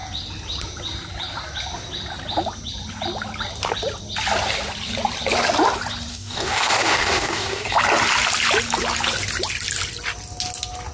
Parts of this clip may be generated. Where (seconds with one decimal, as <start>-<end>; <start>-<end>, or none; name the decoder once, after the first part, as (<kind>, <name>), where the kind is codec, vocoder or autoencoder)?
6.1-7.7 (codec, DAC)